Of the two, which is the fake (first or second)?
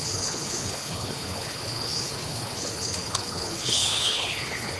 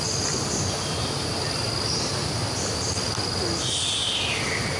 first